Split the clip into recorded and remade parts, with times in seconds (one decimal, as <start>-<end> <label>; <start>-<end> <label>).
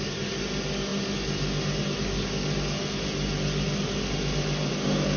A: 0.0-5.2 recorded